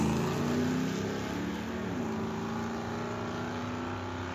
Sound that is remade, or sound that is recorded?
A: recorded